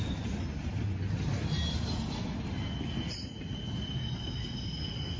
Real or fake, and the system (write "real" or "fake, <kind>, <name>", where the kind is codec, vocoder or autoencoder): real